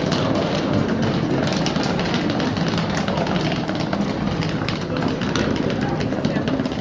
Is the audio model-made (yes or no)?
no